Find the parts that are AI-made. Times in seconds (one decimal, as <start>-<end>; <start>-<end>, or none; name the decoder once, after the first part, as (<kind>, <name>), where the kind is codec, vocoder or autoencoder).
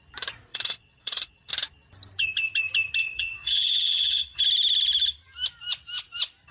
0.5-1.5 (vocoder, WaveNeXt); 3.0-4.4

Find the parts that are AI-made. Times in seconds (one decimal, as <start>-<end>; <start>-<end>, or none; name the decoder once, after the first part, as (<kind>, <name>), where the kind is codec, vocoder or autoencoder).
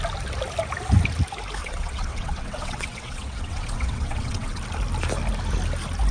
1.6-4.6 (vocoder, WaveNeXt)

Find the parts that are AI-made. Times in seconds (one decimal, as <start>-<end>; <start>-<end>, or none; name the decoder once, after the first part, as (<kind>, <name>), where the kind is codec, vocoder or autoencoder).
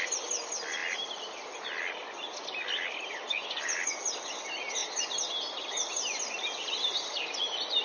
none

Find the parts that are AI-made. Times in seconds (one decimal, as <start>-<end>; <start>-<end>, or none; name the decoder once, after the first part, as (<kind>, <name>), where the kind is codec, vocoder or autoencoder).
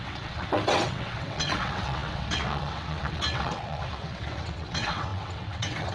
0.0-5.9 (vocoder, WaveNeXt)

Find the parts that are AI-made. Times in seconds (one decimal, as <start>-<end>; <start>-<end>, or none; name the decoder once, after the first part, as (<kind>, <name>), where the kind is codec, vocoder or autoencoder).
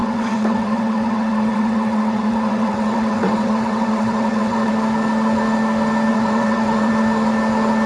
0.0-4.7 (vocoder, WaveNeXt); 6.1-6.9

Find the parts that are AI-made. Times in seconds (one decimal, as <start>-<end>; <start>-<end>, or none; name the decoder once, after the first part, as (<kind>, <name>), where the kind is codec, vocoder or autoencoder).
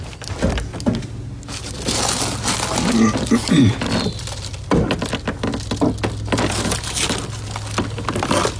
none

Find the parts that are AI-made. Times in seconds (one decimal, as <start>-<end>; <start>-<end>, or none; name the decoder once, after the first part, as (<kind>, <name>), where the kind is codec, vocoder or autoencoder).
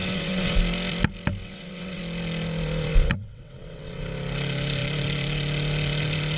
0.0-0.6 (vocoder, WaveNeXt); 1.4-2.0; 2.9-4.0